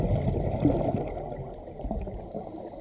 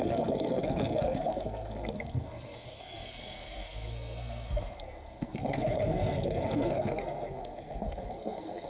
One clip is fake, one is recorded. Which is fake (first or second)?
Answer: second